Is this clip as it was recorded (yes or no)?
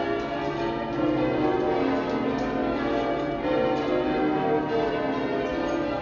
yes